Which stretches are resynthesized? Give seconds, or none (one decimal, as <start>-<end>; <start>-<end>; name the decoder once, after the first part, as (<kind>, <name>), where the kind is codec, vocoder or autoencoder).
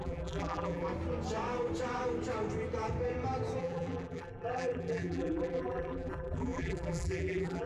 0.0-0.9 (vocoder, BigVGAN v2); 3.6-7.7